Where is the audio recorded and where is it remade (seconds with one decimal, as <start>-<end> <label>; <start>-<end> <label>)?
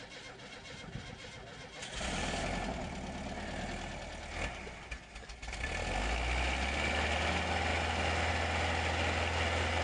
0.0-9.8 recorded